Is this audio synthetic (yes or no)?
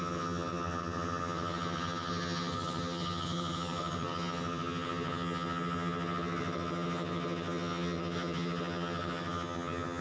yes